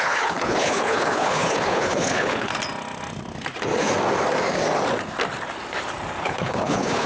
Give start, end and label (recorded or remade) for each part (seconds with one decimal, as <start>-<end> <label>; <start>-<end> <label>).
0.0-2.5 remade; 2.5-6.2 recorded; 6.2-7.1 remade